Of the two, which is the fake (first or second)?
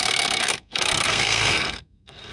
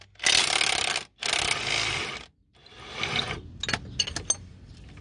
first